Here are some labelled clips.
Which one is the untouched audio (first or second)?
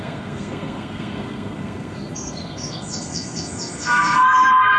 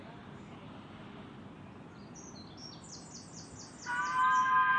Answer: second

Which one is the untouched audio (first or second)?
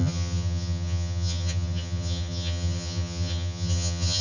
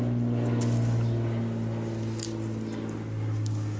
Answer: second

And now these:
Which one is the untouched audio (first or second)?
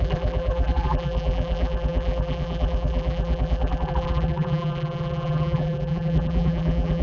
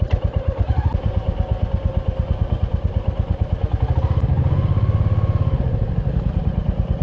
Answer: second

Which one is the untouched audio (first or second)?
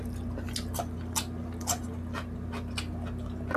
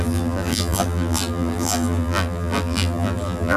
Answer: first